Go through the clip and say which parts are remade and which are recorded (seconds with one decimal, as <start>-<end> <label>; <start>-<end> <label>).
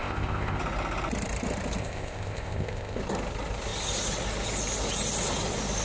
0.0-0.6 remade; 0.6-1.8 recorded; 1.8-3.0 remade; 3.0-5.8 recorded